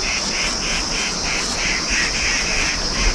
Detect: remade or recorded remade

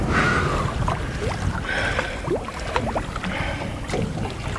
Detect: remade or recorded recorded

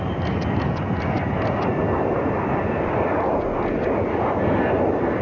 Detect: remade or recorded recorded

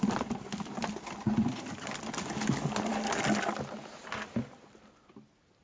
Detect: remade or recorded recorded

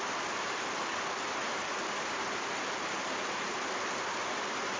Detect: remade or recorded recorded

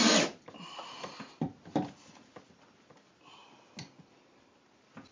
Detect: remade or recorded recorded